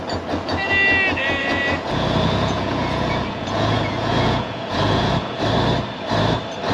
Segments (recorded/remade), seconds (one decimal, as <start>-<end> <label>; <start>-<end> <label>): 0.0-1.4 recorded; 1.4-5.4 remade; 5.4-6.7 recorded